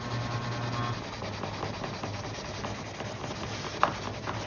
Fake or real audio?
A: real